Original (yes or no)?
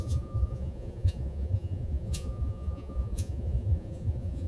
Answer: no